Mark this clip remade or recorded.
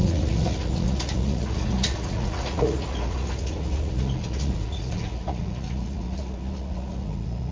remade